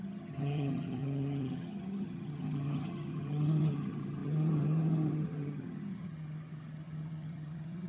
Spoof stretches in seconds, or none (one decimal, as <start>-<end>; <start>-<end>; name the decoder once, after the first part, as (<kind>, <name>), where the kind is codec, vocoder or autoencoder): 0.0-7.9 (vocoder, HiFi-GAN)